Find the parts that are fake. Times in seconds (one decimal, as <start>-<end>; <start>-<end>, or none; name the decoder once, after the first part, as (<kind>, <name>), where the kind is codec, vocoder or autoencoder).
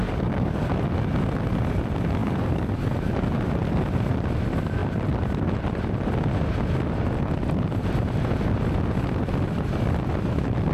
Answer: 0.0-0.7 (codec, DAC); 2.2-2.8